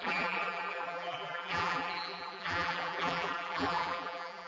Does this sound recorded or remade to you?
remade